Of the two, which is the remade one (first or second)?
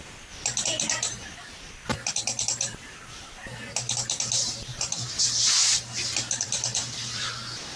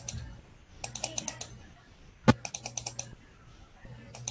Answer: first